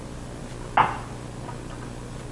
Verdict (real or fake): real